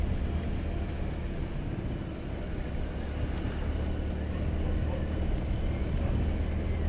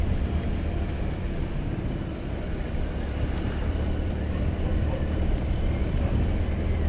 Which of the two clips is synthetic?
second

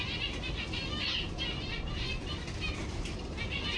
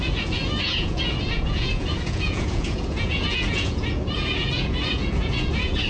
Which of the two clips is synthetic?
second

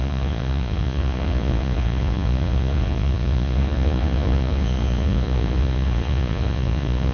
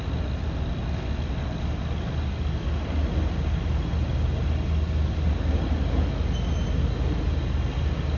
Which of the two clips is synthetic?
first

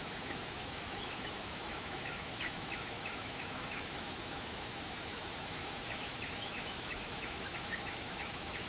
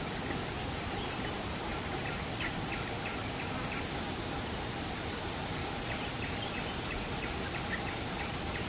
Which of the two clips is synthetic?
first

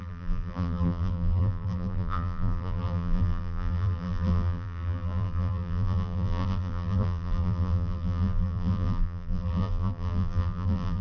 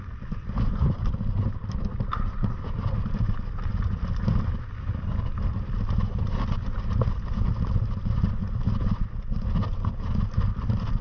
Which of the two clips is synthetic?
first